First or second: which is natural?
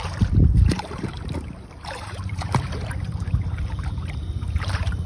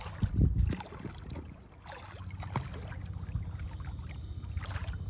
second